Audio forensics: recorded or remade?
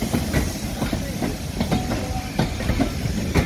recorded